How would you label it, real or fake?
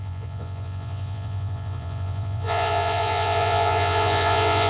fake